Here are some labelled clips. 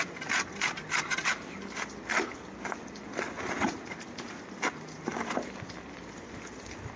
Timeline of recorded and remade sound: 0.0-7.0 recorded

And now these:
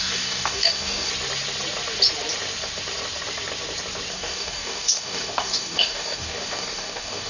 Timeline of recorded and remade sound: 0.0-1.1 remade; 1.1-4.1 recorded; 4.1-7.3 remade

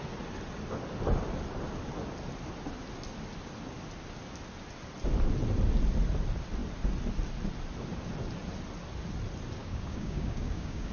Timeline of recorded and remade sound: 0.0-9.6 recorded; 9.6-10.9 remade

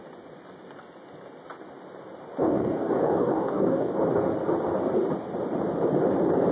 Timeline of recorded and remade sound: 0.0-2.5 recorded; 2.5-3.9 remade; 3.9-6.5 recorded

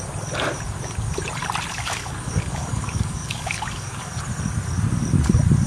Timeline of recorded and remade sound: 0.0-1.7 recorded; 1.7-4.1 remade; 4.1-5.7 recorded

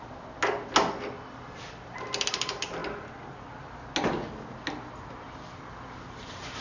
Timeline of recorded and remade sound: 0.0-6.6 recorded

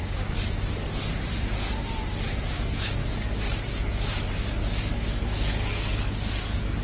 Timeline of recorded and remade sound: 0.0-3.0 recorded; 3.0-6.8 remade

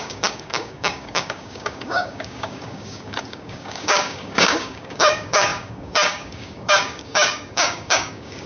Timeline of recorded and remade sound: 0.0-8.5 remade